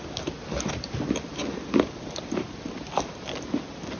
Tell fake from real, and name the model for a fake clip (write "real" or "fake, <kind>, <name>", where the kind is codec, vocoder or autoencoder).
real